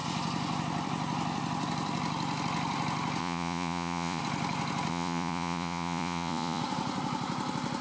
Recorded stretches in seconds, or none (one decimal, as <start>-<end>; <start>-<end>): 0.0-3.2; 4.2-4.9; 6.6-7.8